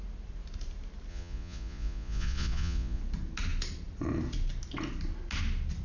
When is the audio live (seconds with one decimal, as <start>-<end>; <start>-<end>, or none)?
0.0-1.1; 3.0-5.8